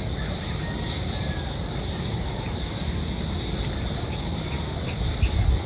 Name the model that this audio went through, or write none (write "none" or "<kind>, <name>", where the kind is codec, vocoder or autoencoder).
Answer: none